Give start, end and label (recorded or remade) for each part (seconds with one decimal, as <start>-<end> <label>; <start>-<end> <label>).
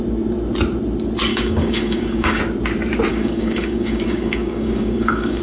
0.0-1.3 recorded; 1.3-2.4 remade; 2.4-3.1 recorded; 3.1-5.4 remade